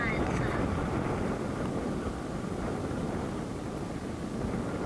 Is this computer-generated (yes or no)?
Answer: no